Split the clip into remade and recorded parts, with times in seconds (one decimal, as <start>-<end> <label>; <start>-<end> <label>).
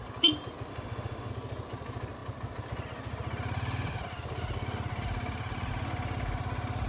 0.0-0.7 recorded; 0.7-1.3 remade; 1.3-6.9 recorded